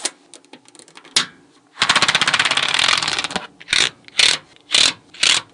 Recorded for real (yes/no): yes